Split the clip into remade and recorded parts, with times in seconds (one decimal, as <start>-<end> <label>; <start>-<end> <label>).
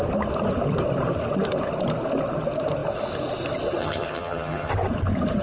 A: 0.0-3.8 recorded; 3.8-4.7 remade; 4.7-5.4 recorded